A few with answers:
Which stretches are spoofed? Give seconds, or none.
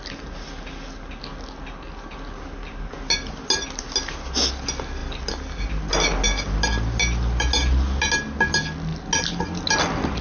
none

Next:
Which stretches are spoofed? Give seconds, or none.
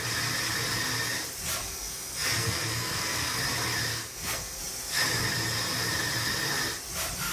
1.6-3.4 (codec, SNAC); 3.9-4.6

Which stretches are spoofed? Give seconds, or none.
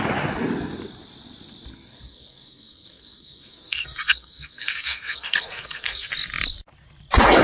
1.7-6.1 (codec, SNAC)